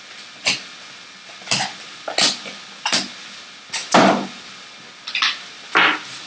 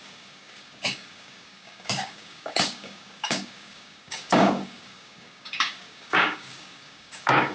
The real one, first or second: first